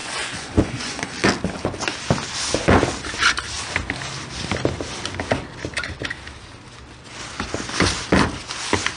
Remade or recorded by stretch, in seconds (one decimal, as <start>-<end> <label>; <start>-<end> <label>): 0.0-1.1 remade; 1.1-9.0 recorded